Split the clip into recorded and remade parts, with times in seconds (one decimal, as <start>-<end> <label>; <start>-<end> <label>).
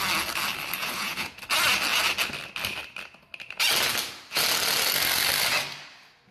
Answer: 0.0-0.8 recorded; 0.8-1.4 remade; 1.4-6.3 recorded